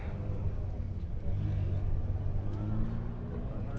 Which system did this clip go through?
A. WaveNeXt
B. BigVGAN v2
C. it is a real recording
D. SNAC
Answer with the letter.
C